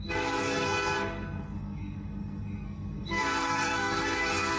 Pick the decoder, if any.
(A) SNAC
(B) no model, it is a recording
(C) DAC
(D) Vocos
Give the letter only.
A